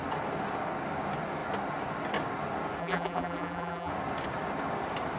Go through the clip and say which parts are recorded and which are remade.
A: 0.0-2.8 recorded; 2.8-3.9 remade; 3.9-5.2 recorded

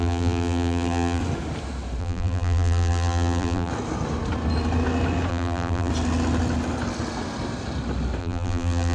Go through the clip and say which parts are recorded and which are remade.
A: 0.0-1.2 remade; 1.2-2.0 recorded; 2.0-3.7 remade; 3.7-5.3 recorded; 5.3-5.9 remade; 5.9-8.2 recorded; 8.2-8.9 remade